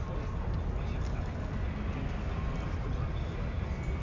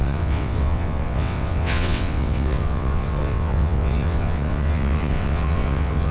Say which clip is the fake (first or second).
second